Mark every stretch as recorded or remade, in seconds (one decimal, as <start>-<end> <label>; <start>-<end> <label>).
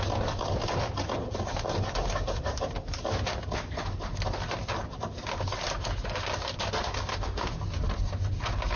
0.0-7.1 recorded; 7.1-7.6 remade; 7.6-8.8 recorded